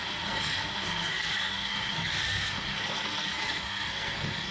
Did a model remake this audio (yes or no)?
yes